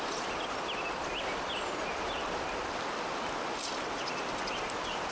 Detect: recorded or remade recorded